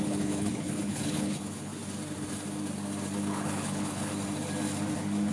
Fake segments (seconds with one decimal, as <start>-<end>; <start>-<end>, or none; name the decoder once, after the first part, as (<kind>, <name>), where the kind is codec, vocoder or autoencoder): 0.0-1.7 (codec, HILCodec); 3.2-4.1